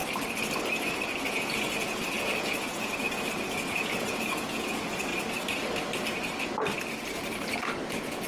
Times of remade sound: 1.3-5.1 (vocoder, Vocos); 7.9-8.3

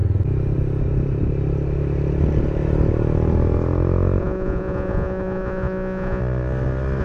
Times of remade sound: 4.2-6.2 (vocoder, Vocos)

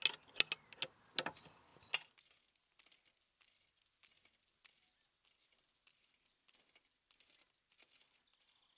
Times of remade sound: none

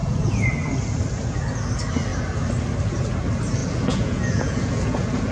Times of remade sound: 0.0-0.5 (vocoder, Vocos); 3.6-5.3